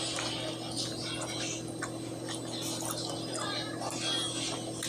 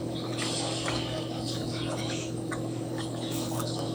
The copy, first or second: second